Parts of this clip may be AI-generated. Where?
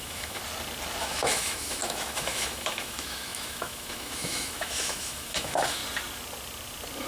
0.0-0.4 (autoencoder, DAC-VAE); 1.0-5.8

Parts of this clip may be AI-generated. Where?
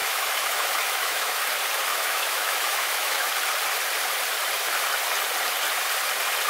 0.0-1.4 (autoencoder, DAC-VAE); 1.9-3.3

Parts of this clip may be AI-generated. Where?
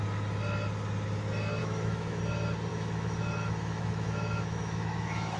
1.6-2.2 (autoencoder, DAC-VAE); 2.7-5.4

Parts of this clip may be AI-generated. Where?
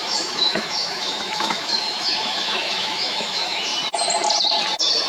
0.0-3.7 (autoencoder, DAC-VAE)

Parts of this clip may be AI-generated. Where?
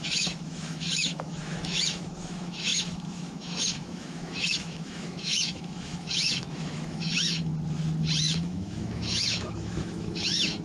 0.0-7.5 (autoencoder, DAC-VAE); 8.2-10.6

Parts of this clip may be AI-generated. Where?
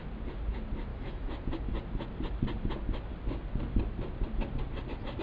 0.9-1.4 (autoencoder, DAC-VAE)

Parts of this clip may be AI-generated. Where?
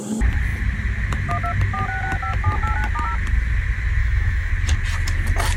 4.0-4.5 (autoencoder, DAC-VAE)